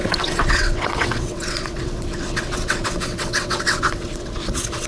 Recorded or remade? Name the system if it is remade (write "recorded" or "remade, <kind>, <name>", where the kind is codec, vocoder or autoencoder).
remade, vocoder, WaveNeXt